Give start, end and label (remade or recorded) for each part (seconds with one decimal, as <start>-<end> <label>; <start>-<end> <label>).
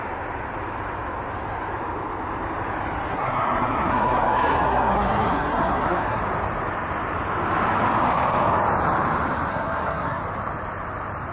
0.0-3.1 recorded; 3.1-6.2 remade; 6.2-9.5 recorded; 9.5-10.2 remade; 10.2-11.3 recorded